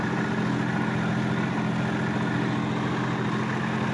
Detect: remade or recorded recorded